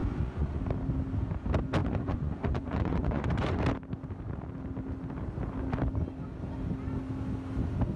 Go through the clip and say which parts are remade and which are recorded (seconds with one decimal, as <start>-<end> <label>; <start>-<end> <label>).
0.0-0.6 remade; 0.6-1.8 recorded; 1.8-3.6 remade; 3.6-8.0 recorded